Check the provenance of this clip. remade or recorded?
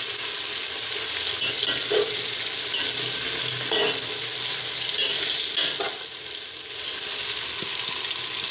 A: recorded